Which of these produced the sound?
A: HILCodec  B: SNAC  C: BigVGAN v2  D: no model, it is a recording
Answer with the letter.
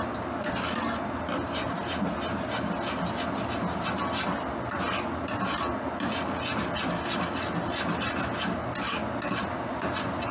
D